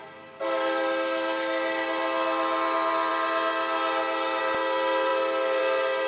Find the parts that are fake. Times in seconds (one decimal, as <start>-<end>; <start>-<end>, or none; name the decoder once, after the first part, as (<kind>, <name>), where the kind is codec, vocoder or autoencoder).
none